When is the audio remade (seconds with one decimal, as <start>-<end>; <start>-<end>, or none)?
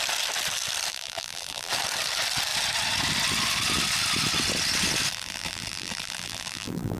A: 0.9-1.7; 5.1-7.0